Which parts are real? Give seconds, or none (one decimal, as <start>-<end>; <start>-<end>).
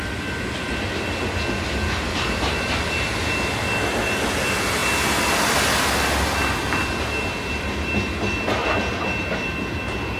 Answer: 0.0-10.2